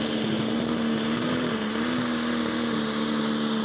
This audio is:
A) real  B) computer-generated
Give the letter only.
A